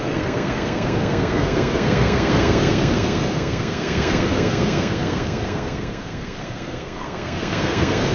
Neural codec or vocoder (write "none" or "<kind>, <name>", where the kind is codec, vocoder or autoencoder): codec, SNAC